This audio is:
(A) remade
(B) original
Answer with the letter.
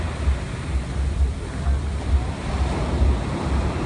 B